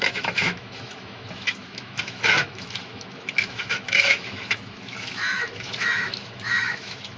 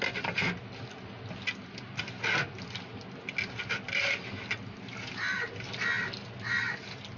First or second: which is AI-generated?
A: first